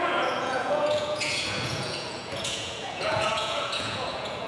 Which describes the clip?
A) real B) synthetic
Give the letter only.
B